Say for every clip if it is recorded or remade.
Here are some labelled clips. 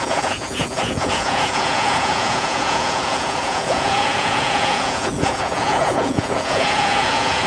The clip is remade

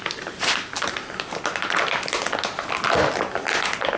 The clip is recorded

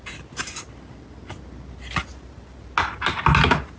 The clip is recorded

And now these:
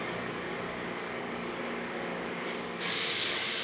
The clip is remade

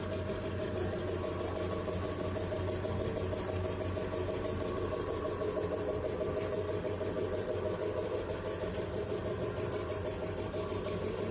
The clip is recorded